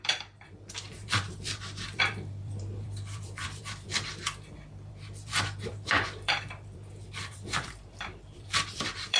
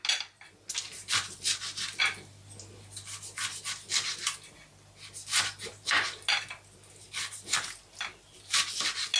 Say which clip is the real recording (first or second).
second